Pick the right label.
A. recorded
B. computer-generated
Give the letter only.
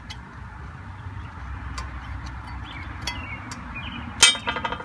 A